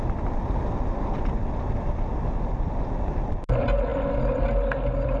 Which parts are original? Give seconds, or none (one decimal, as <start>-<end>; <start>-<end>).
0.0-5.2